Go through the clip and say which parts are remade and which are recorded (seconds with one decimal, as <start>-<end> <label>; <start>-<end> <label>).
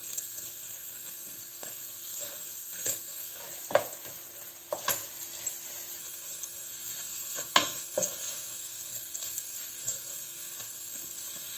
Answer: 0.0-3.4 remade; 3.4-6.0 recorded; 6.0-11.6 remade